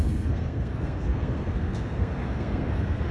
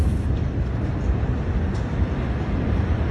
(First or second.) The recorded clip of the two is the second